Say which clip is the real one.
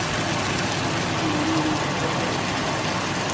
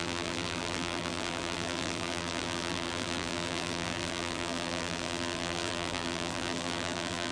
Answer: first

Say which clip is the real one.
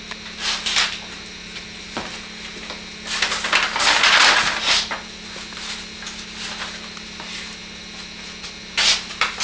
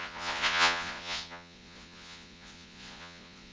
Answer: first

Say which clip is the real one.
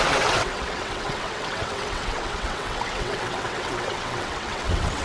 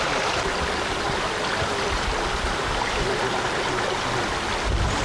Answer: second